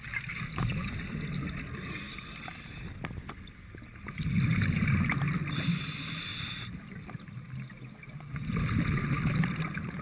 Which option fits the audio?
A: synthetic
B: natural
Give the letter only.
B